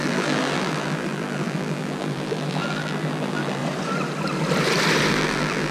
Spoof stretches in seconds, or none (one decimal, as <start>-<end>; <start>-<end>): 0.0-3.6; 5.1-5.7